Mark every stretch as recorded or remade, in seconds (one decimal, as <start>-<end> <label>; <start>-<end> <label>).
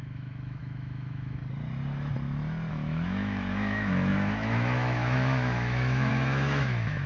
0.0-1.4 remade; 1.4-2.7 recorded; 2.7-7.1 remade